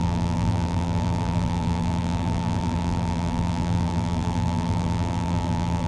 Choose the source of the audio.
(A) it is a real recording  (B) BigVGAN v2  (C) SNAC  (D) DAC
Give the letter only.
B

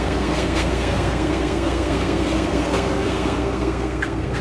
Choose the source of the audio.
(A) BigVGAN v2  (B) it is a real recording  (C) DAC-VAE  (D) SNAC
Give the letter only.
D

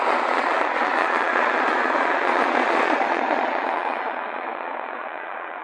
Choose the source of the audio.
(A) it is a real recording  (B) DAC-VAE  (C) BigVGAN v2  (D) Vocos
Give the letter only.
D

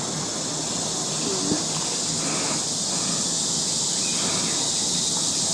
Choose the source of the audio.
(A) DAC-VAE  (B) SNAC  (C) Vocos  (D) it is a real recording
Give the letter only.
D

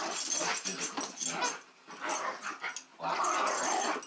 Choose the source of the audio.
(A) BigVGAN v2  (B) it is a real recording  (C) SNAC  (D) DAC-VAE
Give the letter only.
B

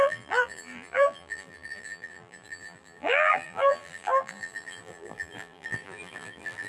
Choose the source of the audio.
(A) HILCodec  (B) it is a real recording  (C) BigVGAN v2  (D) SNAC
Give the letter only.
C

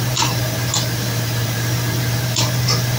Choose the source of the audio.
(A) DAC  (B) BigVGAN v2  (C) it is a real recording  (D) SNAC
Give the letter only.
B